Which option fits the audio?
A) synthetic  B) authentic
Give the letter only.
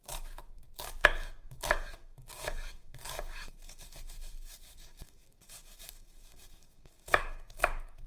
A